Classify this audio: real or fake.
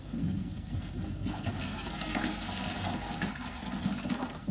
fake